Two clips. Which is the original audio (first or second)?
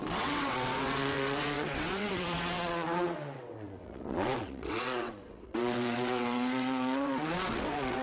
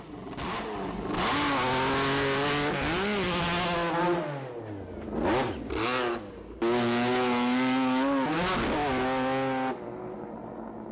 second